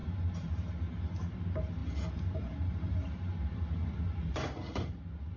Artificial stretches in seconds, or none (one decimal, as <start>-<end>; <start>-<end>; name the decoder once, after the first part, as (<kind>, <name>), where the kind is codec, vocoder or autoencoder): 0.0-0.7 (vocoder, BigVGAN v2); 1.8-5.0